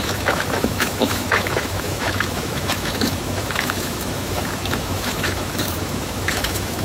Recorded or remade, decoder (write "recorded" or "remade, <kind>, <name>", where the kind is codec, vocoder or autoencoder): remade, autoencoder, DAC-VAE